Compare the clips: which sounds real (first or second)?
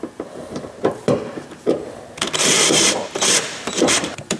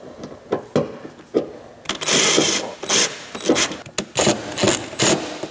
second